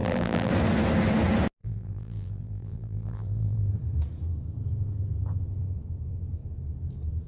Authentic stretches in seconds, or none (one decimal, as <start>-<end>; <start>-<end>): 0.5-1.6; 3.7-7.3

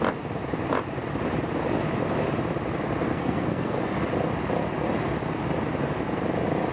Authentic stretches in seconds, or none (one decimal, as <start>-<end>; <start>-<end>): 0.0-3.1; 3.8-6.7

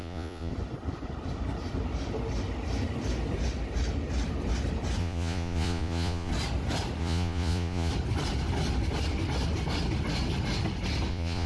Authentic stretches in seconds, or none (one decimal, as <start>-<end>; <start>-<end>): 0.5-5.0; 6.3-7.0; 7.9-11.1

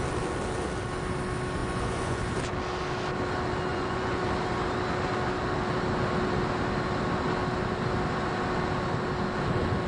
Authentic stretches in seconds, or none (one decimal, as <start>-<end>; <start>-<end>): 0.0-1.6; 2.2-3.7; 4.2-9.9

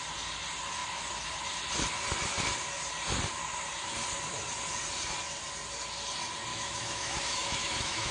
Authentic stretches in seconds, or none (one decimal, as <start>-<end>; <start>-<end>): 0.0-6.5